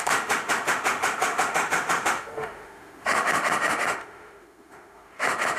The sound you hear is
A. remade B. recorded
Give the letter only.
A